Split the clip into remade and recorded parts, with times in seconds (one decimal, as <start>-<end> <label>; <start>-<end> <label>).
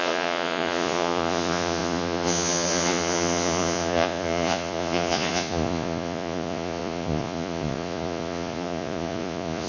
0.0-9.7 remade